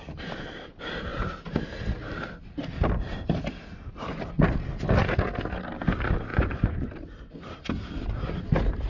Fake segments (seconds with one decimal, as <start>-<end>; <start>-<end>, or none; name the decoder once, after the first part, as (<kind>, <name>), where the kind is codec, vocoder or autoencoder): 6.3-6.9 (vocoder, Vocos)